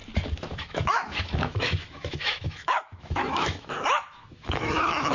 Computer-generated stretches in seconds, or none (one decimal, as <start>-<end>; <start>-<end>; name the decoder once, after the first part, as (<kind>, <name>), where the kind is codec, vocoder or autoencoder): 0.6-5.1 (autoencoder, DAC-VAE)